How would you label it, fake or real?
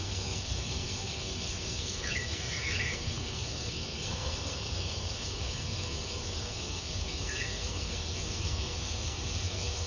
fake